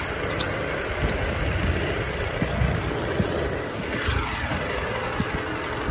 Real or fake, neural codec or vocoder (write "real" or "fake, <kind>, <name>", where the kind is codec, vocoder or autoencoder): real